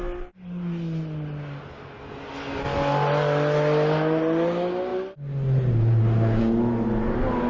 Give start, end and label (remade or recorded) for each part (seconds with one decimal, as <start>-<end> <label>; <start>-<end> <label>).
0.0-7.5 recorded